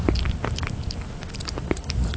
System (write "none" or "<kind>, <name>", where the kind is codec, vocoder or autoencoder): none